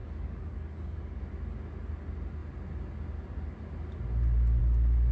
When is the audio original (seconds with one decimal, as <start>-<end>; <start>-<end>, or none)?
1.2-5.1